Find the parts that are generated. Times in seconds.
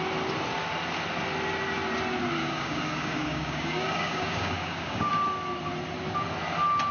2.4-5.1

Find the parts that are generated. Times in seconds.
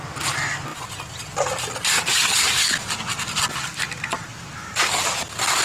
none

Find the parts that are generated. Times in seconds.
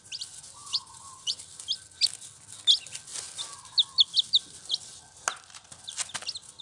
0.6-1.4